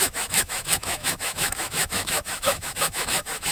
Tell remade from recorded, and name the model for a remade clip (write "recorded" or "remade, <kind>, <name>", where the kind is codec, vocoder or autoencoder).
remade, autoencoder, DAC-VAE